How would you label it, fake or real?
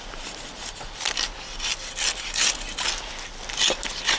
real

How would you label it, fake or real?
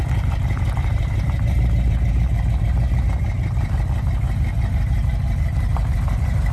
fake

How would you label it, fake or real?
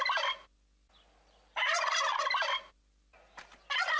real